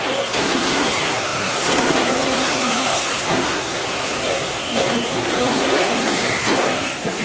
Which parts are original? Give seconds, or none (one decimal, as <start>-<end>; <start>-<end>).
none